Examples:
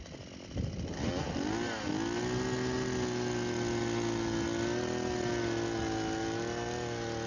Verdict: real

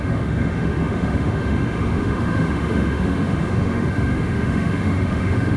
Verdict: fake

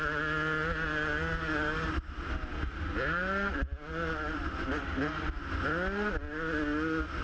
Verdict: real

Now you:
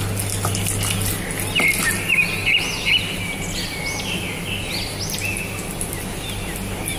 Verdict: real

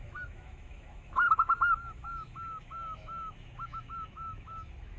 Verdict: fake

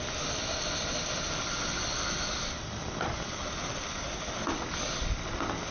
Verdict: real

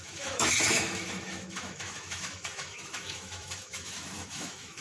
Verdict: fake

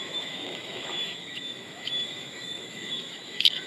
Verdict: fake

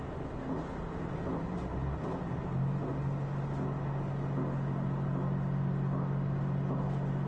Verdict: real